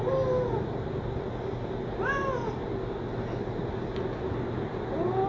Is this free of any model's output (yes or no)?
yes